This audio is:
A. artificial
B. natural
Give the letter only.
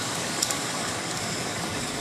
A